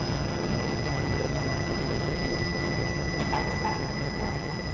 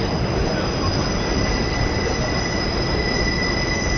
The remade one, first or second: first